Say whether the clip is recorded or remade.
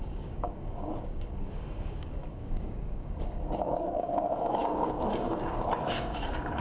remade